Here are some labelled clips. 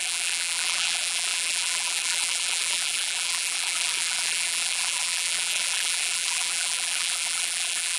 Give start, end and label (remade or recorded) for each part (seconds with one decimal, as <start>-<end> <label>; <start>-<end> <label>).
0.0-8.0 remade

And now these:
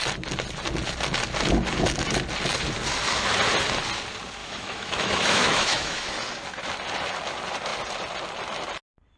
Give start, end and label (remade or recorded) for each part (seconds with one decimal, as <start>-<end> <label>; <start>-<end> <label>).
0.0-4.4 recorded; 4.4-6.1 remade; 6.1-9.2 recorded

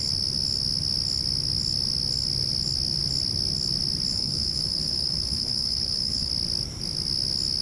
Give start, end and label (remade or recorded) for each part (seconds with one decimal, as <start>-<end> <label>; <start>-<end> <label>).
0.0-4.1 recorded; 4.1-6.3 remade; 6.3-7.6 recorded

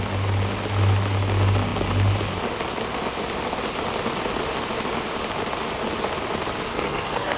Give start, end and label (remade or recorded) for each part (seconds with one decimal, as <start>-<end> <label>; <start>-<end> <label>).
0.0-6.7 recorded; 6.7-7.4 remade

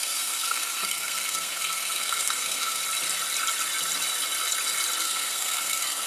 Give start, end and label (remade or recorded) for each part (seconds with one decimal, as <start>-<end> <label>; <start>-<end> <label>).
0.0-2.8 remade; 2.8-5.0 recorded; 5.0-6.1 remade